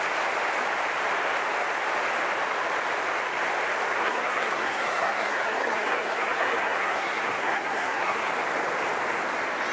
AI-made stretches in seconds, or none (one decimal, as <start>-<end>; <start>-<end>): 4.0-8.3